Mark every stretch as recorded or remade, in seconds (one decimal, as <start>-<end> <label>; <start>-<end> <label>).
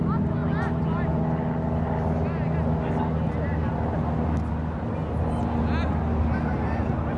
0.0-7.2 recorded